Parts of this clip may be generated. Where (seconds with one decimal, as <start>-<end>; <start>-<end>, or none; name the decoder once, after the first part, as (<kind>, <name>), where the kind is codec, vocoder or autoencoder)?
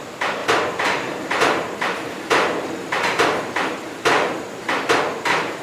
0.4-3.8 (vocoder, BigVGAN v2)